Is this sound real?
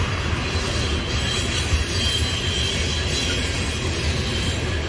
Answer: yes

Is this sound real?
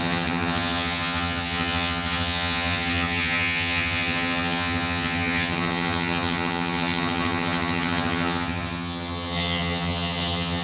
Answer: no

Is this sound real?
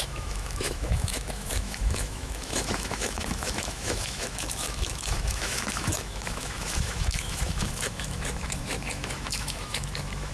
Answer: no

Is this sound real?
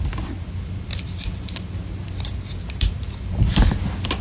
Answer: yes